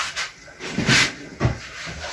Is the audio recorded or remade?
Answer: recorded